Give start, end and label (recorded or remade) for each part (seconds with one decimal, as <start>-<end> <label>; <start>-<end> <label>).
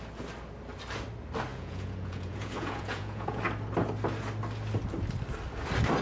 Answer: 0.0-1.5 recorded; 1.5-3.4 remade; 3.4-6.0 recorded